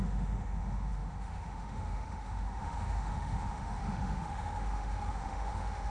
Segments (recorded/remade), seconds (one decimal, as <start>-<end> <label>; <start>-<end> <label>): 0.0-5.9 remade